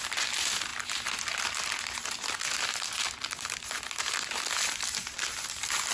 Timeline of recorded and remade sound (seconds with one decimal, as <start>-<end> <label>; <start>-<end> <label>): 0.0-5.9 recorded